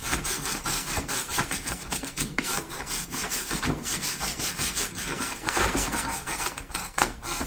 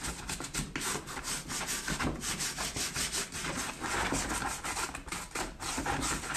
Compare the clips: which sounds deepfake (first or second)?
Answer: first